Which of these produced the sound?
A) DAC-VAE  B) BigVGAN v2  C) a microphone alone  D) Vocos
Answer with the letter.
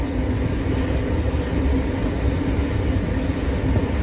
C